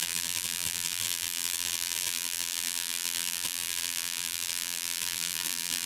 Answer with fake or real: fake